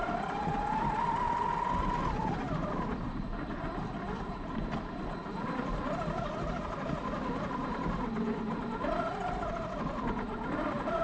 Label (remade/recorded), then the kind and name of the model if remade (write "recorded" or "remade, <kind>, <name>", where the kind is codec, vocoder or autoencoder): recorded